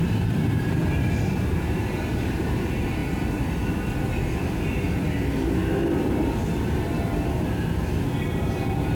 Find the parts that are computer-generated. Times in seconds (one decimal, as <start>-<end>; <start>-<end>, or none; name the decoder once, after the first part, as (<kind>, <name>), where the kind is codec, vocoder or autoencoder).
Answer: 0.0-0.8 (vocoder, BigVGAN v2); 1.3-3.0; 8.2-8.9